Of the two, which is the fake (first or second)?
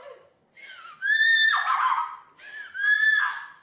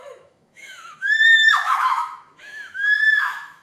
second